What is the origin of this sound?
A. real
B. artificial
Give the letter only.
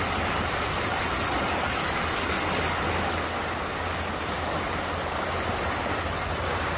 A